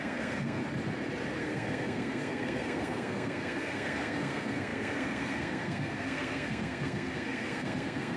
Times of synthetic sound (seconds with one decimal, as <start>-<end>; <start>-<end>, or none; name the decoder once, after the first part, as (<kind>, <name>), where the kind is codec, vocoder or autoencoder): 0.0-0.6 (codec, SNAC); 1.4-8.2